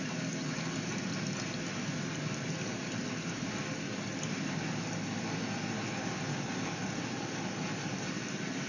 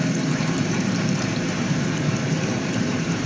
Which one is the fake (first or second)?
second